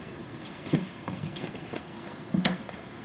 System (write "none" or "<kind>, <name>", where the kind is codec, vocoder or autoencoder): codec, SNAC